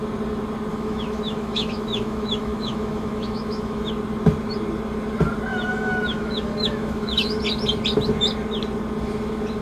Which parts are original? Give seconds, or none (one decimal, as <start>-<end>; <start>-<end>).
0.0-0.7; 3.9-5.5; 7.4-9.6